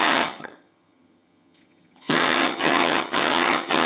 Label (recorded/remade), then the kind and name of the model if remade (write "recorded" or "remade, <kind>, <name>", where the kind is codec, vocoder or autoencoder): remade, vocoder, HiFi-GAN